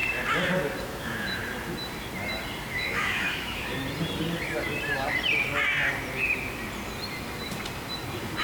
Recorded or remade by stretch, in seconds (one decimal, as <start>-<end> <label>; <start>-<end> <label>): 0.0-0.8 recorded; 0.8-1.4 remade; 1.4-2.7 recorded; 2.7-3.7 remade; 3.7-8.4 recorded